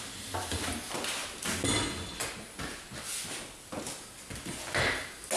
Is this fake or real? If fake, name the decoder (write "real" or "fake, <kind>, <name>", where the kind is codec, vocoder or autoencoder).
real